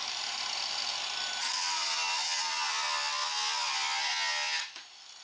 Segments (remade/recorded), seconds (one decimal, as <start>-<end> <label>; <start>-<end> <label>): 0.0-5.2 recorded